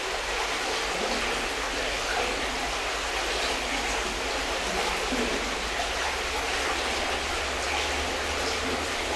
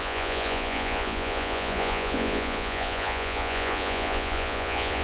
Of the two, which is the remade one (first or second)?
second